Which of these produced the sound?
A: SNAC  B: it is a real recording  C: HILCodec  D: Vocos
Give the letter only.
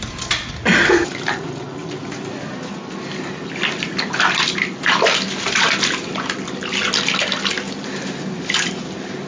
B